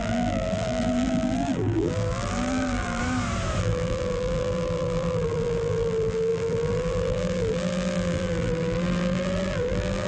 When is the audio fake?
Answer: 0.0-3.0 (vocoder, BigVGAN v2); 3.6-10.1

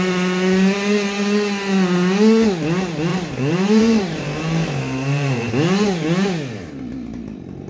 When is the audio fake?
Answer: 3.1-5.5 (vocoder, BigVGAN v2)

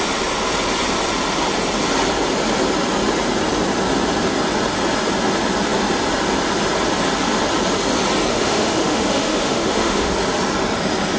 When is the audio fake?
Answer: 8.3-10.1 (autoencoder, DAC-VAE)

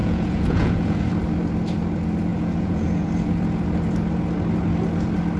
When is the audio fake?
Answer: 0.0-1.0 (vocoder, Vocos); 2.3-3.1